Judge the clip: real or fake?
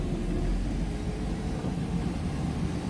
real